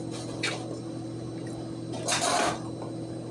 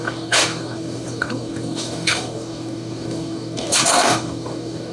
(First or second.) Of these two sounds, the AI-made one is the second